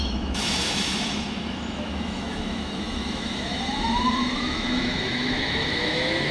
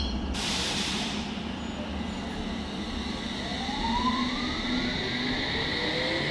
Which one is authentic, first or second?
second